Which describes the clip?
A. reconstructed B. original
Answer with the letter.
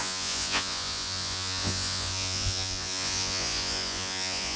A